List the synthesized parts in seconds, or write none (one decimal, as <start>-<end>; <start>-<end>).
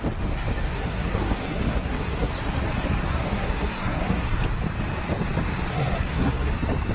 0.7-2.3; 3.0-4.4; 5.7-6.5